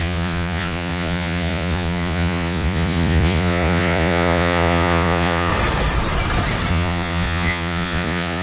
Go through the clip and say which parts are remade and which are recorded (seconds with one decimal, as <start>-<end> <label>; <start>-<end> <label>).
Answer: 0.0-5.5 remade; 5.5-6.7 recorded; 6.7-8.4 remade

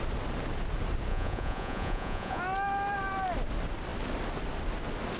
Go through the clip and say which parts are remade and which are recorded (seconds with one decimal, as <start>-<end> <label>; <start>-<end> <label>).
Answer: 0.0-1.1 recorded; 1.1-2.4 remade; 2.4-5.2 recorded

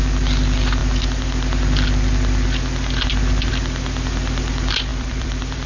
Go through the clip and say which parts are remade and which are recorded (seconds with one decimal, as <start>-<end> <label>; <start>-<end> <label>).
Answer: 0.0-4.9 recorded; 4.9-5.7 remade

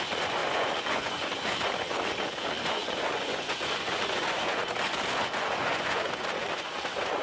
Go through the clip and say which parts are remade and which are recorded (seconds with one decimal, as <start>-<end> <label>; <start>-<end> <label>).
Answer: 0.0-7.2 remade

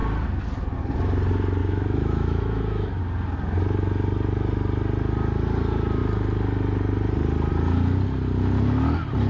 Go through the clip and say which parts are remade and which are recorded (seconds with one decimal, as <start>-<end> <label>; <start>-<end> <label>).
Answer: 0.0-1.6 recorded; 1.6-3.0 remade; 3.0-9.3 recorded

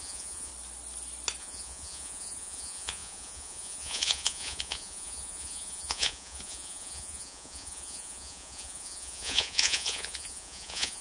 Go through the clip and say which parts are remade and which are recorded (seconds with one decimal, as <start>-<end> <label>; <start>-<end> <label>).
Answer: 0.0-0.5 remade; 0.5-1.4 recorded; 1.4-11.0 remade